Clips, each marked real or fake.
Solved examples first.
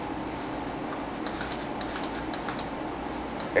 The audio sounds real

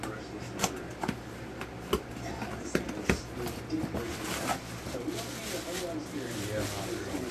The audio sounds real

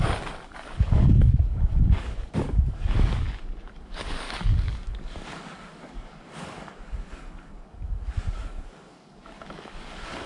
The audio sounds fake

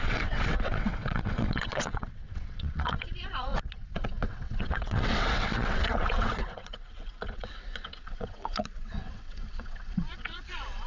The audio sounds fake